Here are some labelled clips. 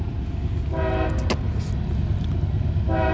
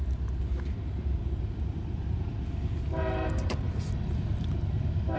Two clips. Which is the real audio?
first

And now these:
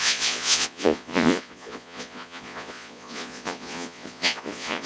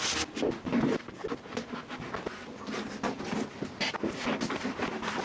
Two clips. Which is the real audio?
second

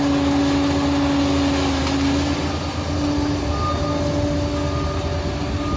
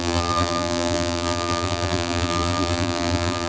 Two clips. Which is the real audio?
first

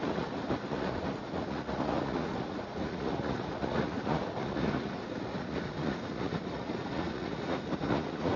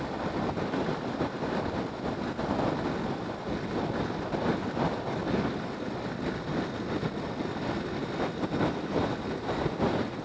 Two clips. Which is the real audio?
second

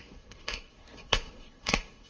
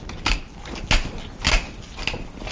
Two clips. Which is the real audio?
second